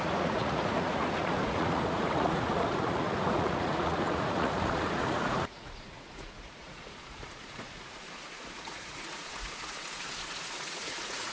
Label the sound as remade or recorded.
remade